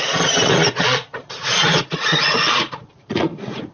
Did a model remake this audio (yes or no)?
yes